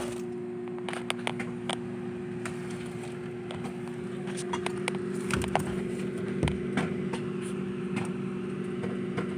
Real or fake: real